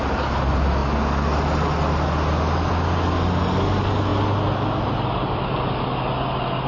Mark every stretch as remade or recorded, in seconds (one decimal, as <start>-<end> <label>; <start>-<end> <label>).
0.0-6.7 recorded